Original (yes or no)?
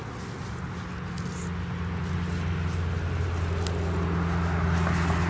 yes